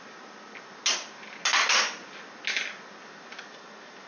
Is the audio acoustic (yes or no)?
yes